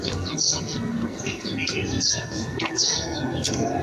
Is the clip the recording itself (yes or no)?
no